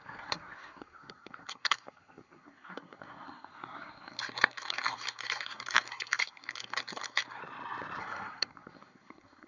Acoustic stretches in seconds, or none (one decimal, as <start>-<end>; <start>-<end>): 7.4-8.0